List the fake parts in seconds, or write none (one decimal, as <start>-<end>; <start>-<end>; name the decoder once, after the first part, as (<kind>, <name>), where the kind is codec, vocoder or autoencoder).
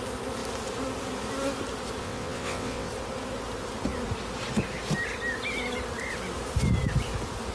2.0-2.9 (vocoder, WaveNeXt)